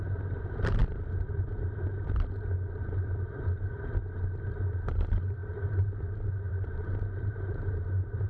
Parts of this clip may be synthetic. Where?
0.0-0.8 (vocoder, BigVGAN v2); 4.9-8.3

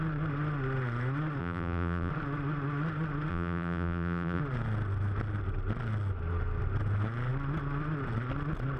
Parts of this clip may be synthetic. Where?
1.4-2.1 (vocoder, BigVGAN v2); 3.3-4.4

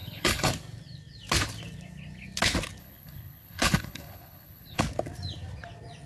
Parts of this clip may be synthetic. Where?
0.0-0.5 (codec, HILCodec); 2.8-4.8

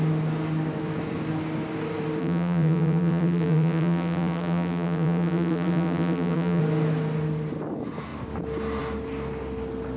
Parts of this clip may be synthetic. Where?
2.2-6.6 (vocoder, BigVGAN v2)

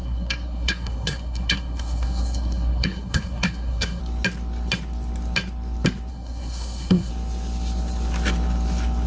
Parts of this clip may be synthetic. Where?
0.0-4.0 (codec, SNAC); 6.1-7.1

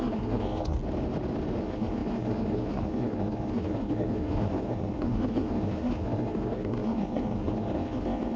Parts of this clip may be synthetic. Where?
0.0-0.8 (codec, SNAC); 1.6-8.4

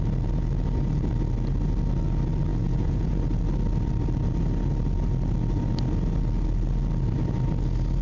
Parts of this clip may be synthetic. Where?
2.5-3.2 (vocoder, Vocos)